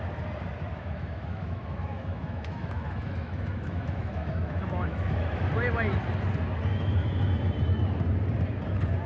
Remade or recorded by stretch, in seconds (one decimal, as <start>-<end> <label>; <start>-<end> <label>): 0.0-0.7 recorded; 0.7-5.5 remade; 5.5-6.7 recorded; 6.7-7.3 remade; 7.3-9.1 recorded